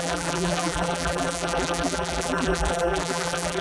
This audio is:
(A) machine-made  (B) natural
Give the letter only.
A